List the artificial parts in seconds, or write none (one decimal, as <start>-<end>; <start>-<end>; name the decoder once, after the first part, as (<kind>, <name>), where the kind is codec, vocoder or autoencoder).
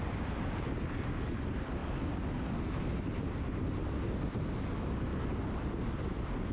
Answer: none